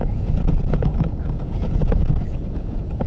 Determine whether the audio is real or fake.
fake